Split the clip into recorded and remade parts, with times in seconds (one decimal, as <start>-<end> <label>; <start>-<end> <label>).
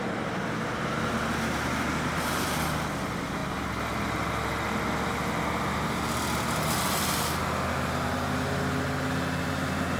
0.0-10.0 recorded